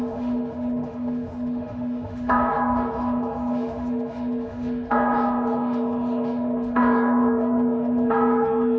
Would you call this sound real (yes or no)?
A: no